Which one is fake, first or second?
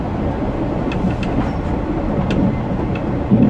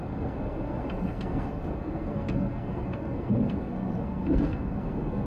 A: second